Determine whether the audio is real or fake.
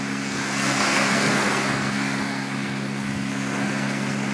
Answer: fake